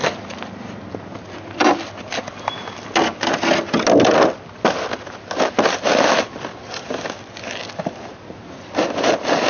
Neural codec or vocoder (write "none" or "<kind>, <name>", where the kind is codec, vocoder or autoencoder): none